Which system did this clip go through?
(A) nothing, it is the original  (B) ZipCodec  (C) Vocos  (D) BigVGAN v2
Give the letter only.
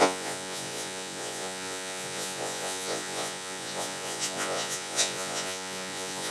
C